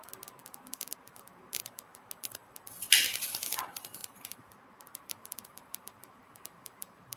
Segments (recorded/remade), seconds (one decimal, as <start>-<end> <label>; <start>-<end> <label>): 0.0-0.4 recorded; 0.4-2.1 remade; 2.1-4.0 recorded; 4.0-7.2 remade